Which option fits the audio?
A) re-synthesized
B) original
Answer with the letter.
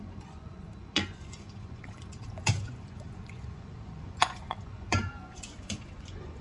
A